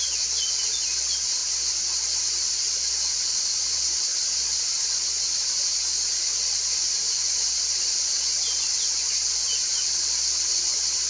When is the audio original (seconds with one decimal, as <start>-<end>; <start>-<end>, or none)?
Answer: 0.0-11.1